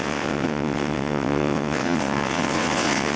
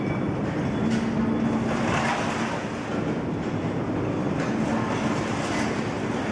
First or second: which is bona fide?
second